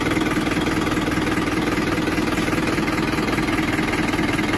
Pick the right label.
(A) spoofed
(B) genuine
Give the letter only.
B